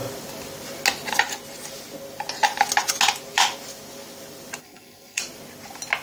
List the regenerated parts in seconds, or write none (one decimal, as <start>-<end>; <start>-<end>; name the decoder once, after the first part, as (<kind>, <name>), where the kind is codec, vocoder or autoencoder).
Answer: 4.6-5.2 (codec, SNAC)